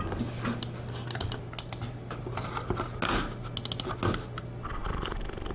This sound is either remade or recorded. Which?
recorded